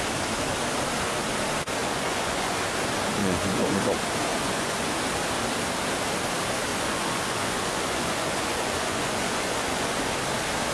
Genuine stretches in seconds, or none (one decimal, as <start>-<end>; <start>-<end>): 0.0-1.8; 2.6-3.2; 3.8-4.3; 4.9-6.7; 10.1-10.7